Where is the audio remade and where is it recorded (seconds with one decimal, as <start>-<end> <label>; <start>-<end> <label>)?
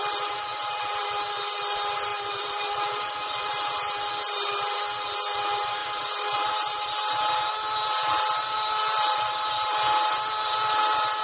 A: 0.0-0.8 remade; 0.8-2.1 recorded; 2.1-3.1 remade; 3.1-5.8 recorded; 5.8-6.5 remade; 6.5-11.2 recorded